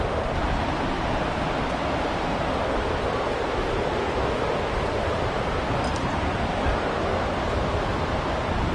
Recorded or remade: recorded